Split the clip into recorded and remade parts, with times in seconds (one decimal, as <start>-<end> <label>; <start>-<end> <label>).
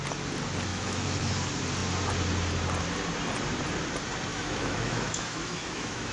0.0-0.7 recorded; 0.7-1.3 remade; 1.3-4.3 recorded; 4.3-6.1 remade